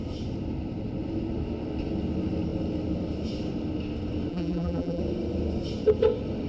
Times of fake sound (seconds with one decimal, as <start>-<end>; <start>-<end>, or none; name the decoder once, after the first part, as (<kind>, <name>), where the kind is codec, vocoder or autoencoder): 4.3-5.0 (vocoder, BigVGAN v2)